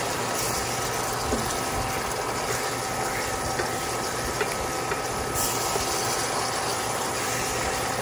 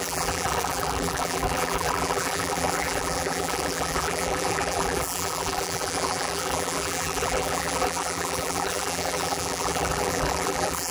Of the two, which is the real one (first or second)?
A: first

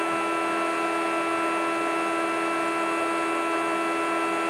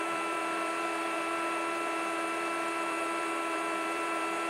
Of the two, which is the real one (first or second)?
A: first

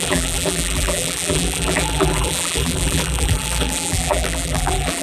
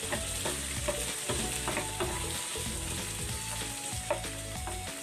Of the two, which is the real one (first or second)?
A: second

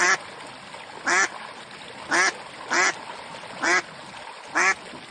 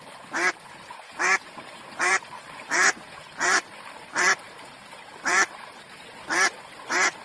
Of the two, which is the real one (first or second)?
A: first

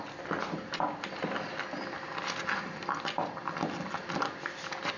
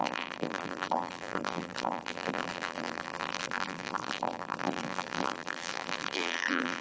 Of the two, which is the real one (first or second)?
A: first